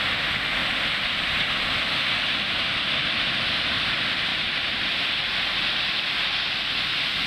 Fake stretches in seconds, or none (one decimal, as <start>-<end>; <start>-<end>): 4.3-4.9